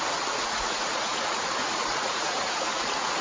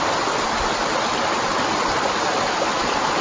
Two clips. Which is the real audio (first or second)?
second